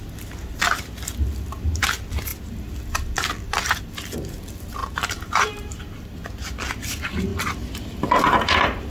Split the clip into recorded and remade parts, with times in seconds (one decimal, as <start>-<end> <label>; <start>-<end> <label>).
0.0-4.8 recorded; 4.8-5.8 remade; 5.8-7.3 recorded; 7.3-8.9 remade